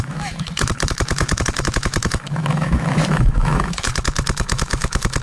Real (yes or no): no